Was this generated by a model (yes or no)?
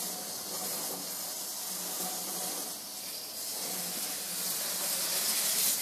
no